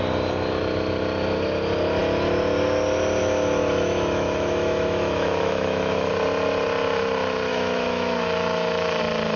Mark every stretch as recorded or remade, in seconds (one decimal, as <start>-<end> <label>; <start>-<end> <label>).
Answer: 0.0-3.6 recorded; 3.6-6.1 remade; 6.1-7.5 recorded; 7.5-9.0 remade; 9.0-9.4 recorded